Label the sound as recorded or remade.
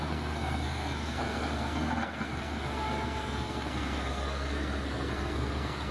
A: remade